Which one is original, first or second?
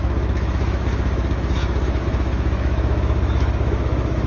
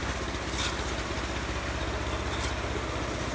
second